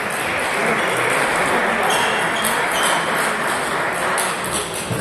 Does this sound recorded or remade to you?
recorded